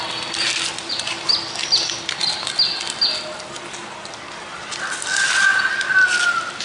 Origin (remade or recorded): recorded